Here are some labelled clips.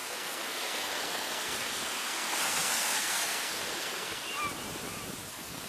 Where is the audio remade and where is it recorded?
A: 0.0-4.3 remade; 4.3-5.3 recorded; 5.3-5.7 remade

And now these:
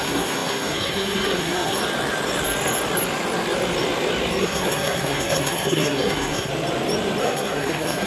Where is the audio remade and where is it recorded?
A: 0.0-1.8 remade; 1.8-4.4 recorded; 4.4-6.5 remade; 6.5-7.2 recorded; 7.2-8.1 remade

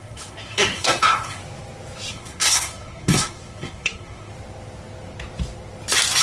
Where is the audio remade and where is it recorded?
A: 0.0-1.4 remade; 1.4-2.1 recorded; 2.1-4.3 remade; 4.3-6.2 recorded

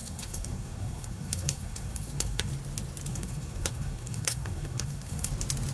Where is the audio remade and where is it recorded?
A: 0.0-2.5 remade; 2.5-3.1 recorded; 3.1-5.3 remade; 5.3-5.7 recorded

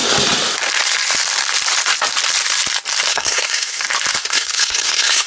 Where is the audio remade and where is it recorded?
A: 0.0-3.1 recorded; 3.1-3.8 remade; 3.8-4.2 recorded; 4.2-5.3 remade